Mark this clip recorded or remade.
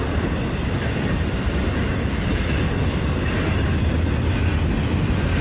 recorded